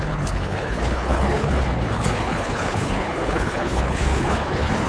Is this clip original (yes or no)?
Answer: no